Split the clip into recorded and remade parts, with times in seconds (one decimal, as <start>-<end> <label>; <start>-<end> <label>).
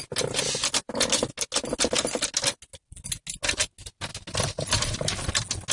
0.0-5.7 recorded